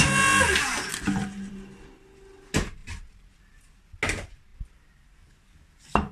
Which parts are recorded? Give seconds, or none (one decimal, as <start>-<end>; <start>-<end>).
0.0-6.1